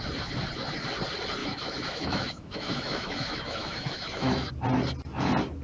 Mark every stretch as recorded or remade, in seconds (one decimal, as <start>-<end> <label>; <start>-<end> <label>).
0.0-1.4 recorded; 1.4-4.5 remade; 4.5-5.6 recorded